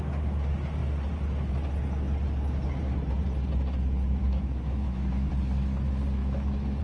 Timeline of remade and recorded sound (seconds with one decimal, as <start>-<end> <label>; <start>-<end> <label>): 0.0-4.2 recorded; 4.2-5.3 remade; 5.3-6.2 recorded; 6.2-6.8 remade